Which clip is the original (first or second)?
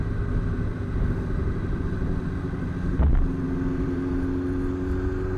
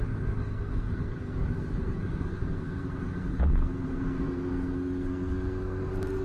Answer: first